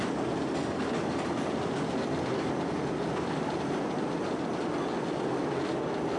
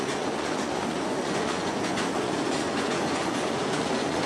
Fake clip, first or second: second